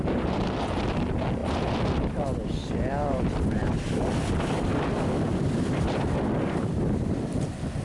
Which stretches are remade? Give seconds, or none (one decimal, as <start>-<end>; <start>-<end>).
1.4-4.1; 5.3-6.6

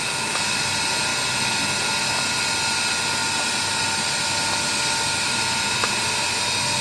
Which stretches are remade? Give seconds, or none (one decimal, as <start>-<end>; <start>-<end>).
none

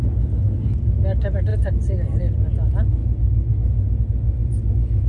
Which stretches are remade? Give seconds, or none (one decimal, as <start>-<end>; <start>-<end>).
none

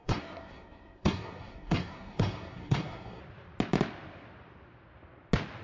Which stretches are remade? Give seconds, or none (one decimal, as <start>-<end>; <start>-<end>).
0.0-3.2

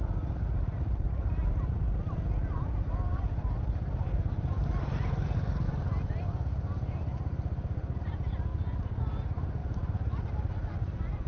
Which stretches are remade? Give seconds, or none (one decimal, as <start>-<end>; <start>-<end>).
0.5-2.1; 8.5-9.0; 9.6-10.3

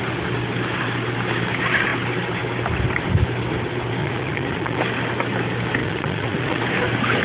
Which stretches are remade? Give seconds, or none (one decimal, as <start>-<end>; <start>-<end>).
4.0-4.8; 5.8-6.6